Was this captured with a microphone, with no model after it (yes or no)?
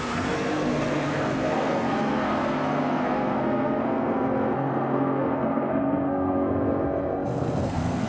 no